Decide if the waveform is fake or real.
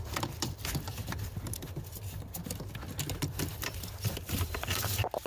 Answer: real